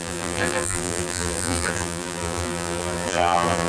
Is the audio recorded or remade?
remade